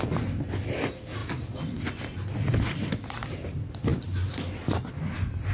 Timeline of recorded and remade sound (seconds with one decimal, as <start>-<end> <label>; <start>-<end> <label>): 0.0-5.5 recorded